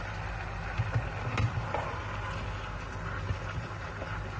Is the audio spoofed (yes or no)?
no